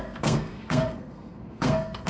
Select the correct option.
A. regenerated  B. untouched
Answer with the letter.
A